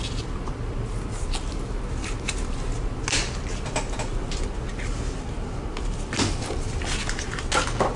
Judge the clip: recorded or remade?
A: recorded